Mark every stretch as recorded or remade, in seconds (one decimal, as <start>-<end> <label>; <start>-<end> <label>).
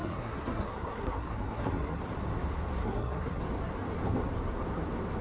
0.0-2.0 remade; 2.0-2.8 recorded; 2.8-3.4 remade; 3.4-5.2 recorded